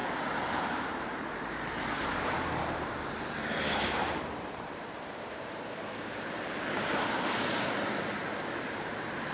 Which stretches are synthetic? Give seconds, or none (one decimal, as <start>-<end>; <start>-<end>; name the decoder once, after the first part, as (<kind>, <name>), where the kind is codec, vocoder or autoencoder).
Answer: 0.5-7.3 (vocoder, BigVGAN v2); 8.6-9.3